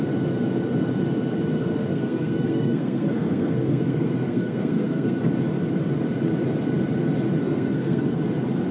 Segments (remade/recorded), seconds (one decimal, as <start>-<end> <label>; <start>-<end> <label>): 0.0-1.9 recorded; 1.9-5.2 remade; 5.2-7.4 recorded; 7.4-8.2 remade; 8.2-8.7 recorded